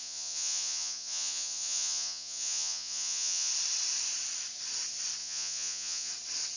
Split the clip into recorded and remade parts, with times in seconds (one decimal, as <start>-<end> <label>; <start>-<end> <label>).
0.0-3.5 remade; 3.5-5.2 recorded; 5.2-6.1 remade; 6.1-6.6 recorded